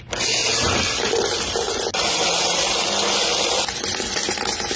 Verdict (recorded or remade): recorded